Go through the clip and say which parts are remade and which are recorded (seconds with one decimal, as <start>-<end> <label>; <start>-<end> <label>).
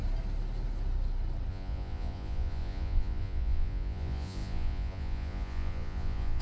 0.0-1.5 recorded; 1.5-6.4 remade